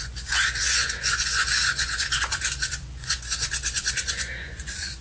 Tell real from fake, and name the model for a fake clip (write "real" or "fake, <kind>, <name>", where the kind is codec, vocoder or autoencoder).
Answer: fake, vocoder, Vocos